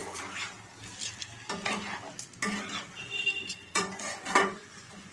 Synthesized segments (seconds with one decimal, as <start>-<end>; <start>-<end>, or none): 3.0-5.1